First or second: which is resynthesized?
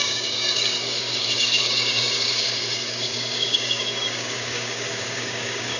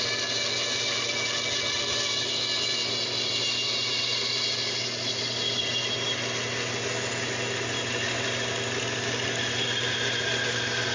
first